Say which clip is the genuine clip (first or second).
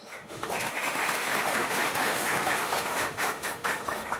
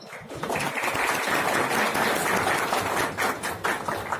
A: second